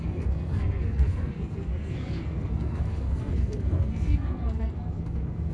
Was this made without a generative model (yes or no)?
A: no